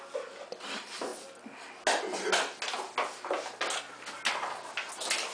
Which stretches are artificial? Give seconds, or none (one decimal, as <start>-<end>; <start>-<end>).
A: none